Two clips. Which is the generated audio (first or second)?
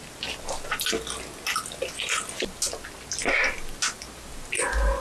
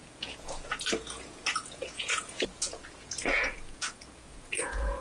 second